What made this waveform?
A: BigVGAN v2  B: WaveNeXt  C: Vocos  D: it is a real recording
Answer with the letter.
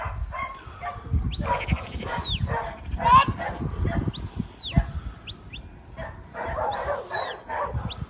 D